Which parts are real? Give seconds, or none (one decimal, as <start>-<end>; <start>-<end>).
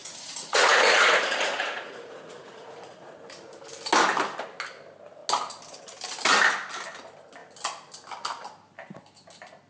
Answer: 3.2-9.7